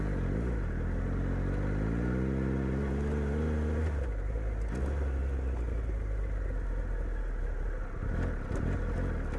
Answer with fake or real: real